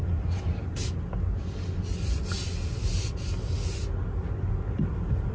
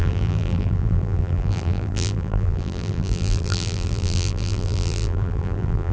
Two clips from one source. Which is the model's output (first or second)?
second